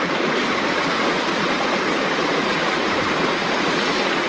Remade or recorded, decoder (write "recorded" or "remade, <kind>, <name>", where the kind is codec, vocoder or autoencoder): remade, vocoder, Vocos